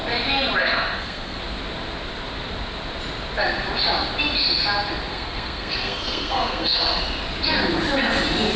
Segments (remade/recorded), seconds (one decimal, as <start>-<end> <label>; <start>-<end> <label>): 0.0-0.6 recorded; 0.6-1.4 remade; 1.4-5.1 recorded; 5.1-7.0 remade; 7.0-8.6 recorded

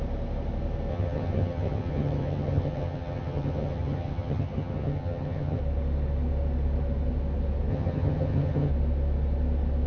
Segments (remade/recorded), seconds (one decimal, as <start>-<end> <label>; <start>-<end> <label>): 0.0-0.9 recorded; 0.9-5.6 remade; 5.6-7.7 recorded; 7.7-8.7 remade; 8.7-9.9 recorded

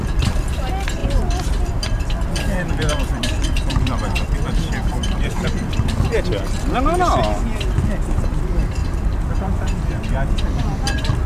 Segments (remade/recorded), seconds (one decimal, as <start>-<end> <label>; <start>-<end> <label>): 0.0-1.0 recorded; 1.0-6.2 remade; 6.2-11.3 recorded

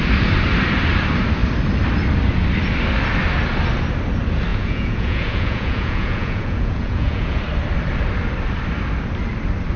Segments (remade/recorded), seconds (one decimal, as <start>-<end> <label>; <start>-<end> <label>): 0.0-4.5 recorded; 4.5-7.4 remade; 7.4-9.8 recorded

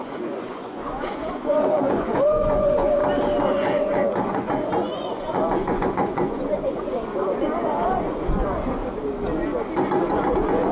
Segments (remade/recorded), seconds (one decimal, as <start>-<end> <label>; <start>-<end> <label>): 0.0-3.0 remade; 3.0-3.5 recorded; 3.5-8.8 remade; 8.8-10.1 recorded; 10.1-10.7 remade